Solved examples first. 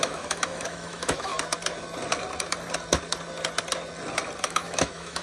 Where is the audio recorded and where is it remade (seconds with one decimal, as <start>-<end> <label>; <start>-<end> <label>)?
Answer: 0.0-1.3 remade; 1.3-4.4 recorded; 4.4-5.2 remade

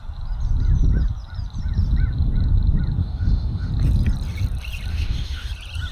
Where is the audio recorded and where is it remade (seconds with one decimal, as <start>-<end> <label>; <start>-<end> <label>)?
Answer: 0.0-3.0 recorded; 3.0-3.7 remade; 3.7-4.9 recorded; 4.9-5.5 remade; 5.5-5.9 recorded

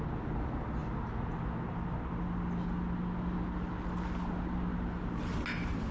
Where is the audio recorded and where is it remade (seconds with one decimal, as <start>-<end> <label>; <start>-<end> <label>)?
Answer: 0.0-5.9 recorded